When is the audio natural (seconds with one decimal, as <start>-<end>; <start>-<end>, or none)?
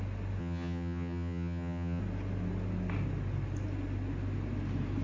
0.0-0.4; 2.0-5.0